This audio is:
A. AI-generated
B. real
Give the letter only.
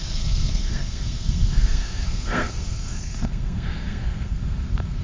A